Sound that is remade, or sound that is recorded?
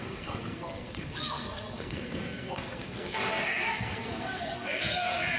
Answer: remade